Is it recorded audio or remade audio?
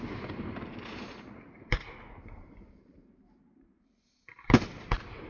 remade